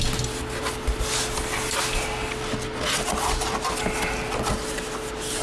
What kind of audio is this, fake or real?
real